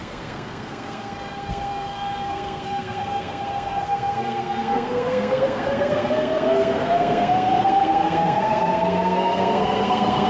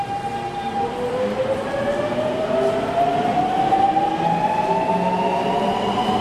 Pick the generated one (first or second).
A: first